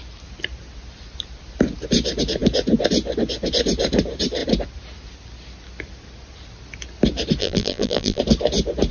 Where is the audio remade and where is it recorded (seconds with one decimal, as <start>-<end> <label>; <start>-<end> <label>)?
0.0-7.4 recorded; 7.4-8.2 remade; 8.2-8.9 recorded